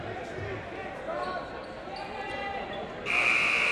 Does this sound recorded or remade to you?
recorded